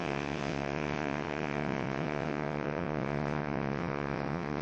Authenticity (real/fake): fake